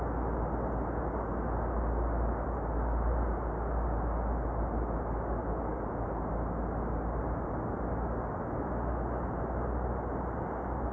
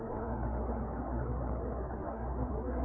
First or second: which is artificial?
second